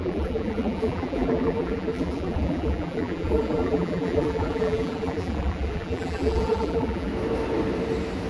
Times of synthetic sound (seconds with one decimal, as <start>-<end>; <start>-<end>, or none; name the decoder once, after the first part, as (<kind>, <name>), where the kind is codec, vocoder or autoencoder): 0.0-7.1 (vocoder, BigVGAN v2)

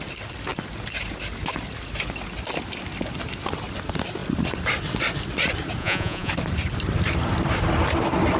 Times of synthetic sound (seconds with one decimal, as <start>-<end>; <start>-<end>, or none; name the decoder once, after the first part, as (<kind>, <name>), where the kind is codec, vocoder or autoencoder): 5.8-6.3 (vocoder, Vocos)